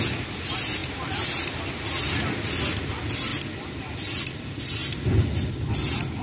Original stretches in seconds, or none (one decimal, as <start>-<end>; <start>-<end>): 0.0-6.2